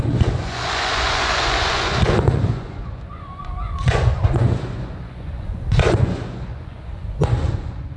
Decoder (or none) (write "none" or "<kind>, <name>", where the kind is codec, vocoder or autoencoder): vocoder, Vocos